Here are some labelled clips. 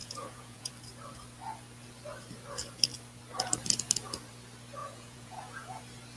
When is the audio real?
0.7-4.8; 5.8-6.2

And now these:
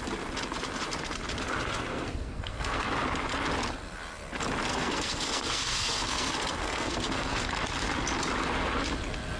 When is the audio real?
0.0-1.9; 2.9-4.7; 7.5-9.4

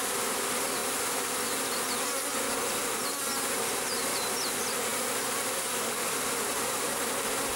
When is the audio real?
0.8-3.6; 4.9-5.9

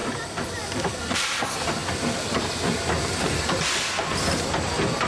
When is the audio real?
1.2-5.1

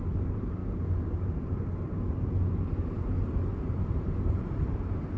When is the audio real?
0.6-3.7